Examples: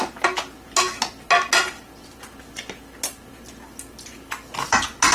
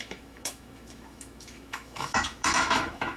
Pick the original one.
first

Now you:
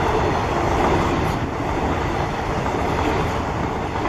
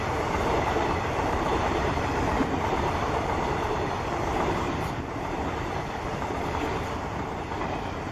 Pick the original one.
first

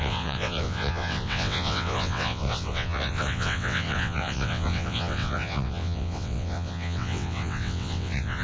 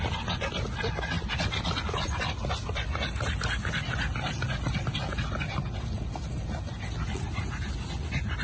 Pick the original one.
second